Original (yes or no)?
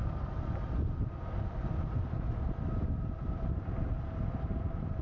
yes